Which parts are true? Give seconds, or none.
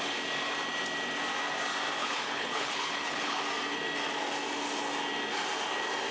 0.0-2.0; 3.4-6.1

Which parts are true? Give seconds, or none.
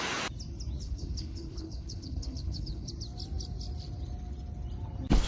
0.0-0.8; 2.9-5.3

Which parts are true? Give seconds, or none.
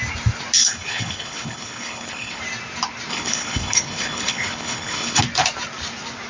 0.0-0.6; 2.4-3.1; 5.2-6.3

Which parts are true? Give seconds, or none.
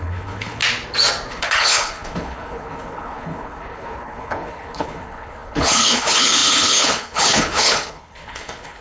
0.6-1.3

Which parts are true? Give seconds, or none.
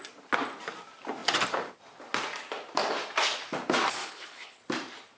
0.0-4.0; 4.6-5.2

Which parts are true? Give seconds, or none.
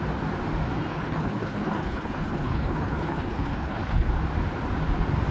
0.0-0.9; 4.1-5.3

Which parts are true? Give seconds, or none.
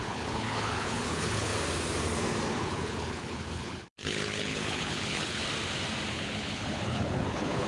1.5-2.5; 5.4-6.1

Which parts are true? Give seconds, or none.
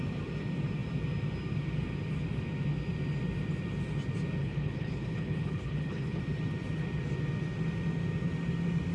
0.0-4.4; 6.2-8.9